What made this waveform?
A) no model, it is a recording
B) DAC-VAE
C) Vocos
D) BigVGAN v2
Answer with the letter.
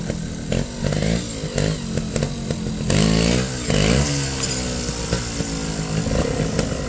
A